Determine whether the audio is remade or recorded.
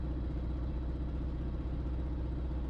recorded